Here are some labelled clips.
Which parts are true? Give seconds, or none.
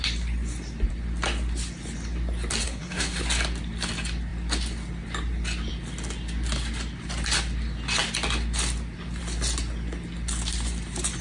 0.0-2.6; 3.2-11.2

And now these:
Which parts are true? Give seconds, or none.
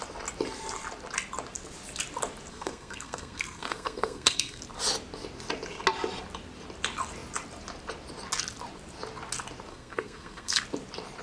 0.0-2.5; 4.6-9.7; 10.6-11.2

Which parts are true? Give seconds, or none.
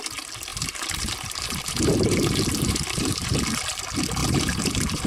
0.0-0.5; 3.6-4.2